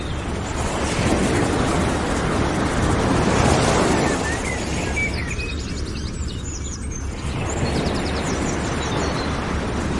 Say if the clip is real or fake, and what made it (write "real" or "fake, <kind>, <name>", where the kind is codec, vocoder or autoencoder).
real